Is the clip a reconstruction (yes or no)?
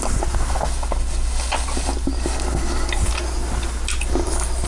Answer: no